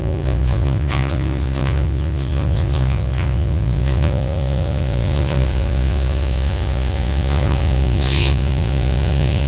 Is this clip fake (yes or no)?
yes